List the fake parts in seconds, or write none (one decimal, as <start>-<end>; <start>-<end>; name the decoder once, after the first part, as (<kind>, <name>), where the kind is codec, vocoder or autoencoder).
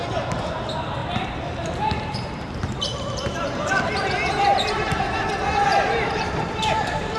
1.0-5.3 (vocoder, BigVGAN v2); 5.7-7.2